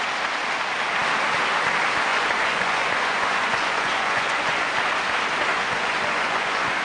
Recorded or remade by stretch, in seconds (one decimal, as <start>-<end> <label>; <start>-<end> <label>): 0.0-2.1 recorded; 2.1-4.7 remade; 4.7-5.5 recorded; 5.5-6.8 remade